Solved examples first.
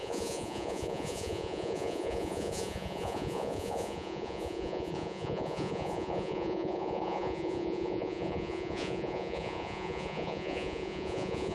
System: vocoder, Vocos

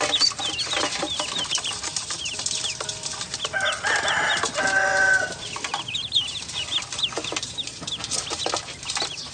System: none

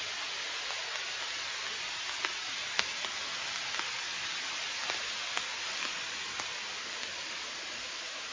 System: none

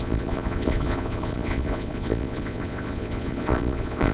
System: vocoder, Vocos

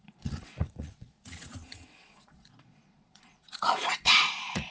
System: vocoder, Vocos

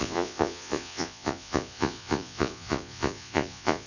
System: vocoder, Vocos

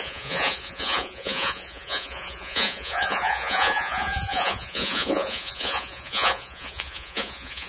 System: vocoder, Vocos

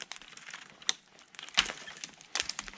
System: none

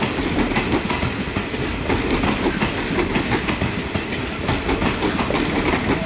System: none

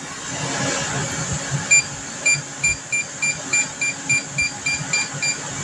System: none